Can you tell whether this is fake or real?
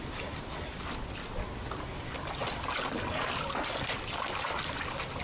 real